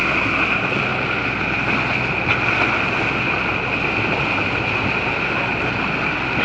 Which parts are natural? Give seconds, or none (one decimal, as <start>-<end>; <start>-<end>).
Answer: 0.0-6.4